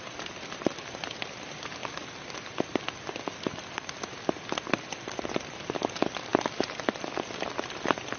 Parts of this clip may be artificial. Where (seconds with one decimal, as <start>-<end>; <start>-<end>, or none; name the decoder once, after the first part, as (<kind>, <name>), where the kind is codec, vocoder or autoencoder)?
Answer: none